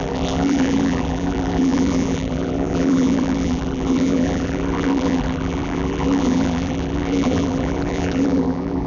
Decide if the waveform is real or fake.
fake